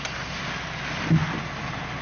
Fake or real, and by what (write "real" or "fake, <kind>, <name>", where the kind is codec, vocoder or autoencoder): real